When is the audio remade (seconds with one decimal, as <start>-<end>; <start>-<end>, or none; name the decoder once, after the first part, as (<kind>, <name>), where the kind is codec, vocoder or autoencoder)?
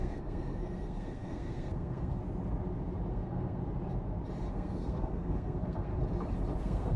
0.0-2.2 (codec, SNAC); 3.1-3.6; 4.5-5.9; 6.6-7.0